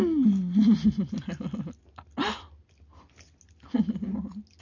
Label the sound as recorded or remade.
recorded